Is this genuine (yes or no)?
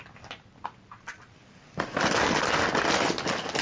yes